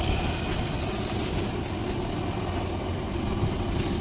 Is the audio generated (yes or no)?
no